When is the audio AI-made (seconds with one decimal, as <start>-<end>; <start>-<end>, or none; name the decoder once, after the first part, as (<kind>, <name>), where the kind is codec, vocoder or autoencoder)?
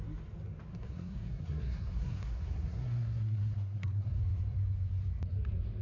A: 0.7-4.2 (codec, SNAC)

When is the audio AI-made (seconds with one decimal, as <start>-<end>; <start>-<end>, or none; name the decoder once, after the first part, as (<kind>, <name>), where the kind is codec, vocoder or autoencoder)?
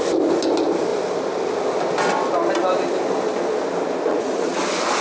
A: 4.1-4.6 (vocoder, Vocos)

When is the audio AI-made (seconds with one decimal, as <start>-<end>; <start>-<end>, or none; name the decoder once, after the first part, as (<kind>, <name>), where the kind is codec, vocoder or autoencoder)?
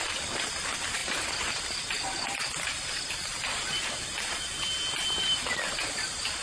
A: none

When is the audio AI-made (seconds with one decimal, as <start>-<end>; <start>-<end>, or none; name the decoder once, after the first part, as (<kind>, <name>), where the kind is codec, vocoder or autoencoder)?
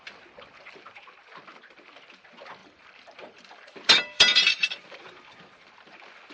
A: 2.6-5.0 (vocoder, BigVGAN v2)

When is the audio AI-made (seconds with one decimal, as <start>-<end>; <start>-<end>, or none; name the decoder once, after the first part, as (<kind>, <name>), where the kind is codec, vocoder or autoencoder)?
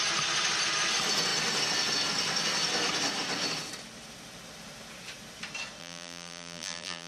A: 5.8-7.1 (vocoder, BigVGAN v2)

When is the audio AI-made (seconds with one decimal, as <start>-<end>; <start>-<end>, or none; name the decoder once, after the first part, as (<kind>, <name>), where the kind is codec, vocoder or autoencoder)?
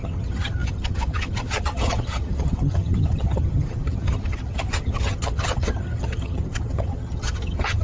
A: 0.0-7.8 (vocoder, HiFi-GAN)